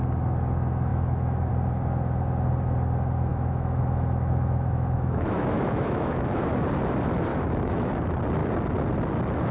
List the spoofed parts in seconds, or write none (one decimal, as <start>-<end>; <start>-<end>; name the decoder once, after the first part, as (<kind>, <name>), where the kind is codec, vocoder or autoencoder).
0.9-1.5 (autoencoder, DAC-VAE); 3.3-6.5; 7.3-7.9

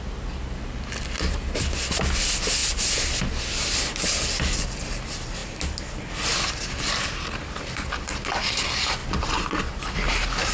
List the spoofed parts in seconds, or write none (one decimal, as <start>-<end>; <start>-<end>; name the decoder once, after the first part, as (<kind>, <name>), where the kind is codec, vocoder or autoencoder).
none